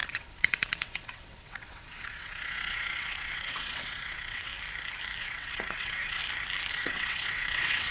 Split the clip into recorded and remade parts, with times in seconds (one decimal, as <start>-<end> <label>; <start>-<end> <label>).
0.0-4.5 remade; 4.5-5.2 recorded; 5.2-6.2 remade; 6.2-6.7 recorded; 6.7-7.9 remade